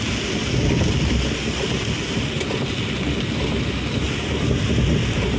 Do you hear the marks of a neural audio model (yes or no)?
no